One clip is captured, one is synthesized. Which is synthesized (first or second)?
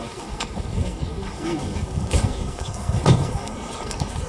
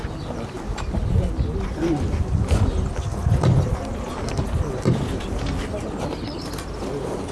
first